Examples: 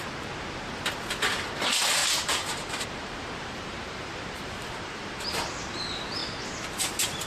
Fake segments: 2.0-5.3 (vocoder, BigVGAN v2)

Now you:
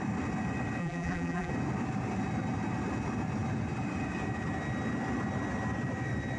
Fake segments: 0.8-1.5 (vocoder, BigVGAN v2)

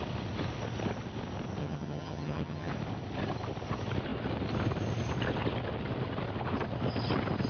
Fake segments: 1.6-2.7 (vocoder, HiFi-GAN)

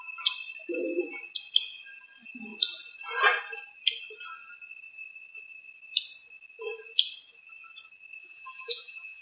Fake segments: 8.2-9.2 (vocoder, BigVGAN v2)

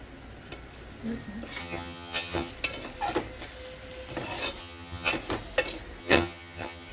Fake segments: 1.6-2.5 (vocoder, HiFi-GAN); 4.6-5.1; 6.0-6.9